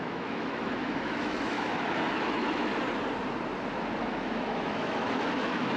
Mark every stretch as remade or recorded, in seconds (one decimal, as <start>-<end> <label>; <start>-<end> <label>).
0.0-2.7 remade; 2.7-4.0 recorded; 4.0-5.8 remade